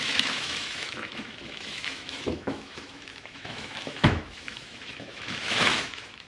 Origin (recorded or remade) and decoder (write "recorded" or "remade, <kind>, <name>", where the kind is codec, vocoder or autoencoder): remade, autoencoder, DAC-VAE